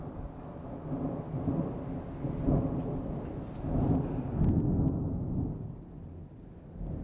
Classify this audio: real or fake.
real